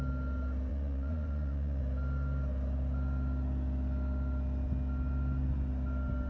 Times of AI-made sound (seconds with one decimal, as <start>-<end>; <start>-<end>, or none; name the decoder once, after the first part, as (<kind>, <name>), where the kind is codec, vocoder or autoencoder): 0.7-1.8 (vocoder, Vocos)